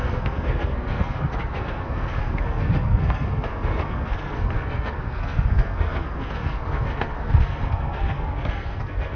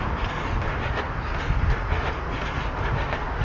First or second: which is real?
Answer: second